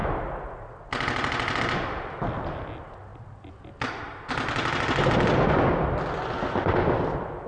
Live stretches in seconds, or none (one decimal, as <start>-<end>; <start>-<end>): 0.0-7.5